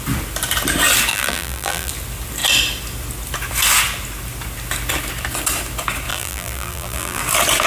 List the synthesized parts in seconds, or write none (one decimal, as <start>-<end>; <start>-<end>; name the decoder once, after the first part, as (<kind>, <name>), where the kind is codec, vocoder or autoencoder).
1.1-1.9 (vocoder, BigVGAN v2); 6.1-7.2